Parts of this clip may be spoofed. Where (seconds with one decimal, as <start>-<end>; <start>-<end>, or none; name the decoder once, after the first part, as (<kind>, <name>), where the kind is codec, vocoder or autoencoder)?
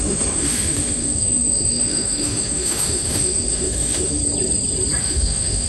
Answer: 0.0-4.2 (autoencoder, DAC-VAE); 5.0-5.7